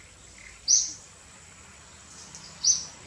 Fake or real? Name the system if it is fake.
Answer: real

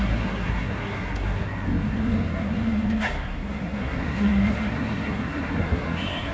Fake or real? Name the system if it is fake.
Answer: fake, codec, SNAC